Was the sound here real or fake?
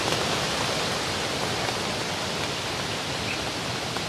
real